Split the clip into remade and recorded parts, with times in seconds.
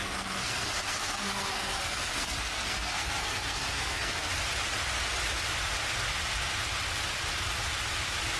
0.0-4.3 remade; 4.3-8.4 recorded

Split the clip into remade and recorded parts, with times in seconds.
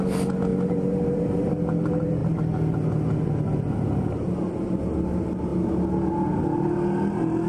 0.0-0.5 recorded; 0.5-1.5 remade; 1.5-7.5 recorded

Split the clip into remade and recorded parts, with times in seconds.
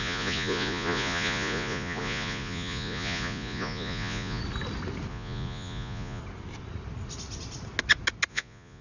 0.0-4.4 remade; 4.4-5.1 recorded; 5.1-6.2 remade; 6.2-8.3 recorded; 8.3-8.8 remade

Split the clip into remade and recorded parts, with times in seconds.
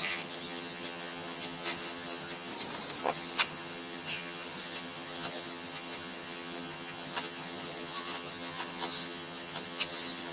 0.0-2.5 remade; 2.5-3.0 recorded; 3.0-10.3 remade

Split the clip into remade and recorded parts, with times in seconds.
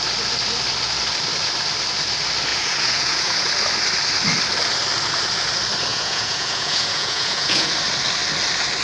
0.0-2.5 recorded; 2.5-3.5 remade; 3.5-5.9 recorded; 5.9-7.7 remade; 7.7-8.8 recorded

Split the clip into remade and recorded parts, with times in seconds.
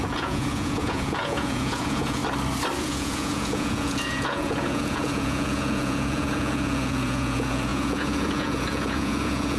0.0-2.2 remade; 2.2-2.8 recorded; 2.8-9.6 remade